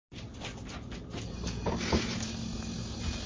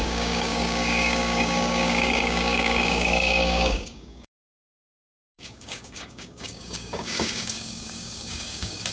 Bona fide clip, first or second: first